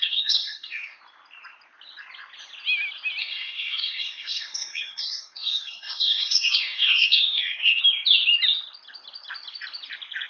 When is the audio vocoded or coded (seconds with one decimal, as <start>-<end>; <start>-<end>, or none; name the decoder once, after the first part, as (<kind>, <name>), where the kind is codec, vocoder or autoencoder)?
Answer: 0.0-1.0 (codec, SNAC); 3.2-7.8